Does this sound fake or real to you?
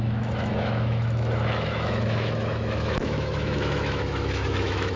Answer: fake